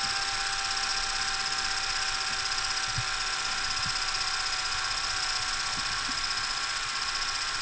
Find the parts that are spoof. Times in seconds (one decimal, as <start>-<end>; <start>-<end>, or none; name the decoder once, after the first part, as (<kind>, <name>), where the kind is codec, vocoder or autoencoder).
none

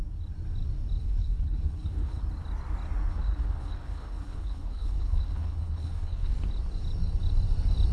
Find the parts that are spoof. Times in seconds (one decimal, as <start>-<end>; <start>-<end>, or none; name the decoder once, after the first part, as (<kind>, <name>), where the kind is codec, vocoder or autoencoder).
1.0-2.2 (codec, HILCodec); 3.1-6.3